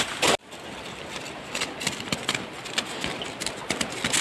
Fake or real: real